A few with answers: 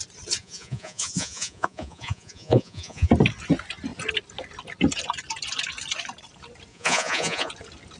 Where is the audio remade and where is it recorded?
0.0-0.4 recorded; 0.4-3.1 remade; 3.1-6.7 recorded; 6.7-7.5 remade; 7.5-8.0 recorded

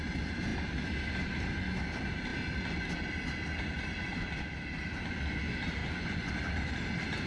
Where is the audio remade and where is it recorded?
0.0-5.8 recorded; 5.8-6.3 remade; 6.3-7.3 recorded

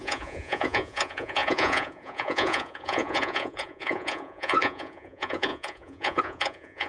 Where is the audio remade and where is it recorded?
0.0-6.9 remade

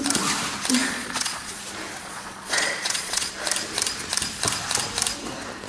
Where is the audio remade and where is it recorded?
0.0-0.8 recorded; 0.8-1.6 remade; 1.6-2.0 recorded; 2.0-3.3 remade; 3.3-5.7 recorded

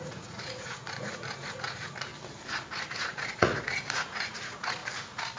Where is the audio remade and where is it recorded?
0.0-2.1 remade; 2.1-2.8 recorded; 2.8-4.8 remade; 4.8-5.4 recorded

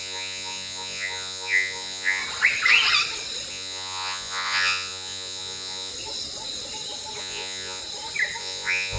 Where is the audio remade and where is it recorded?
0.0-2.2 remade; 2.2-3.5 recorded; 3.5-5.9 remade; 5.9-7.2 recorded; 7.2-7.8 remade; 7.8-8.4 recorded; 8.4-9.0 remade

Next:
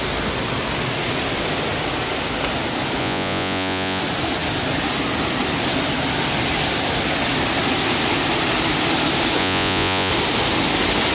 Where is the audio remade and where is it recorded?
0.0-3.0 recorded; 3.0-4.0 remade; 4.0-9.4 recorded; 9.4-10.1 remade; 10.1-11.1 recorded

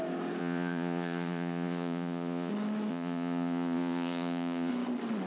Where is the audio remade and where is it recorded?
0.0-0.4 recorded; 0.4-2.5 remade; 2.5-2.9 recorded; 2.9-4.7 remade; 4.7-5.3 recorded